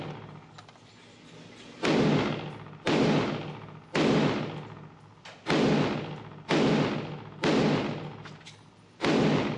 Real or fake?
real